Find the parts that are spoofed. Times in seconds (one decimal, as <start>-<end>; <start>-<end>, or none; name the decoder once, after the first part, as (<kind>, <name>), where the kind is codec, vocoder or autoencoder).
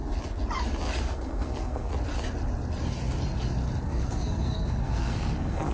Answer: 1.0-1.9 (codec, SNAC); 3.8-5.7